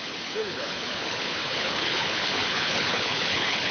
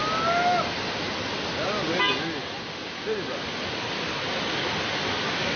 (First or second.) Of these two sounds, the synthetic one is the first